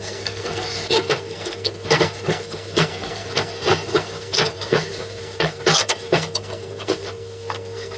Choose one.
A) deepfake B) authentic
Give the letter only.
A